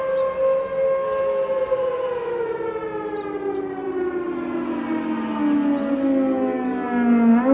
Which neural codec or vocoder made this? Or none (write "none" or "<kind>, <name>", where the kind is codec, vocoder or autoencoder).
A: none